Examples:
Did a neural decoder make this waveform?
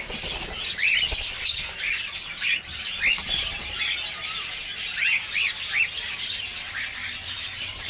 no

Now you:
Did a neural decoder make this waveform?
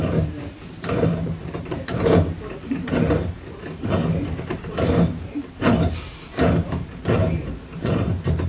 yes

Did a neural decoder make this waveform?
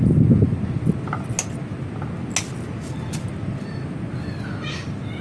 no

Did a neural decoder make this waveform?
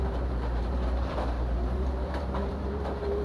yes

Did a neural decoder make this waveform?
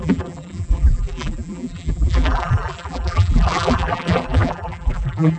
yes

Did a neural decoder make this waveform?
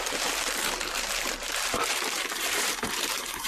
yes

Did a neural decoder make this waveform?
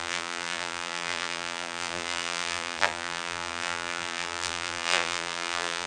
yes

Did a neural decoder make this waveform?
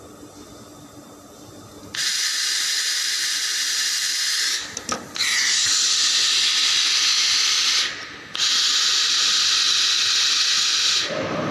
no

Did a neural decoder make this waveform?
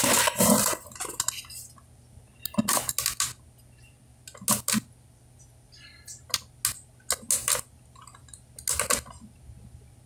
no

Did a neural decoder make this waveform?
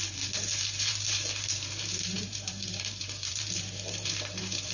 yes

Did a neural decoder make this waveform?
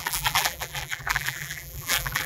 yes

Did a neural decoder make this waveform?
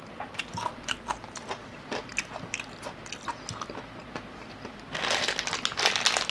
no